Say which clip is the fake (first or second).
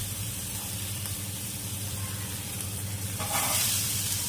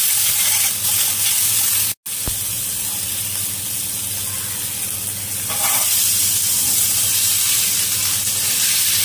first